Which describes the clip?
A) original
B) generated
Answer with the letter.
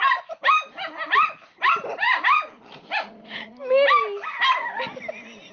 A